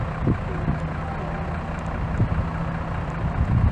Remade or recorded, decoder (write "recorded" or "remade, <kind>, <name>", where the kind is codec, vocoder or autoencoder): recorded